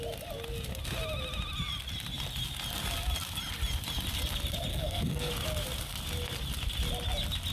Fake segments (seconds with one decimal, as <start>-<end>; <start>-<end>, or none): 4.7-5.3